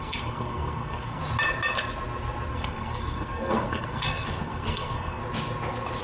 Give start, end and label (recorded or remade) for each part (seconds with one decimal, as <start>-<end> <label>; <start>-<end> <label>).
0.0-1.2 remade; 1.2-2.5 recorded; 2.5-5.2 remade; 5.2-6.0 recorded